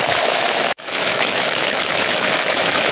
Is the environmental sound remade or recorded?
remade